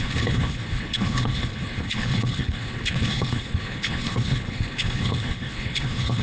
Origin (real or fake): fake